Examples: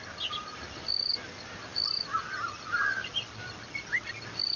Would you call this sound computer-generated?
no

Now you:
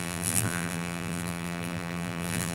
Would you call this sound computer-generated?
yes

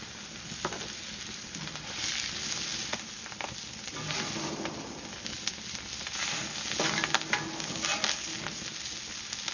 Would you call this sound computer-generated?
no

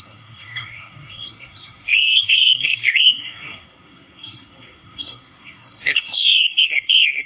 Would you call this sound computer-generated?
yes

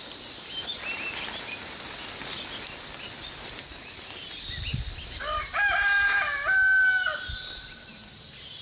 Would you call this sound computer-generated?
no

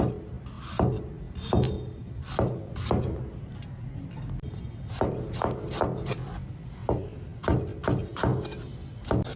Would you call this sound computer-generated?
no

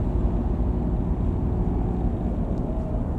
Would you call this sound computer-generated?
no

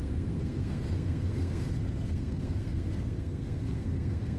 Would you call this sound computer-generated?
yes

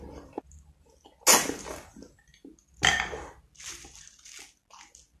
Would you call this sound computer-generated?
no